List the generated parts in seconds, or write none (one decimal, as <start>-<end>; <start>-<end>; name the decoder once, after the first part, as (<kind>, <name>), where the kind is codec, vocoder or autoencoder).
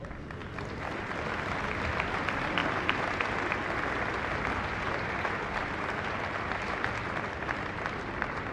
none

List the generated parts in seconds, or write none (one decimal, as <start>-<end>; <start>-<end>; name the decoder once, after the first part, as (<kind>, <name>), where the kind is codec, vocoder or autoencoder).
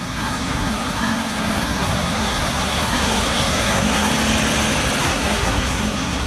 0.0-4.1 (codec, SNAC); 5.0-6.3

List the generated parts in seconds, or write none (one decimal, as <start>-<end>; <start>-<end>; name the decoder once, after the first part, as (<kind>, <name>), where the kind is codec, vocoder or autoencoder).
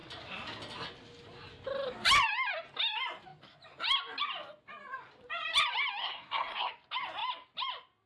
6.0-6.7 (codec, SNAC)